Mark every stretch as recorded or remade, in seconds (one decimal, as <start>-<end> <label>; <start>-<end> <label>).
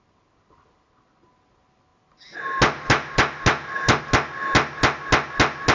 0.0-5.7 recorded